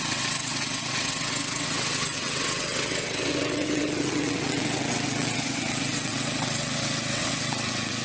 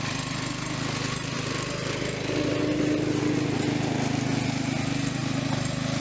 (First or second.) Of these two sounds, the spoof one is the first